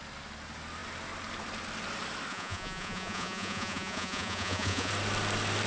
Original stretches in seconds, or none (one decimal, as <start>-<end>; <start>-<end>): 0.0-2.3; 4.9-5.7